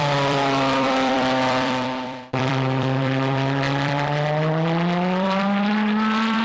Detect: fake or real fake